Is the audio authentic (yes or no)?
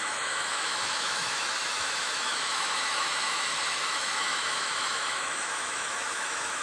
no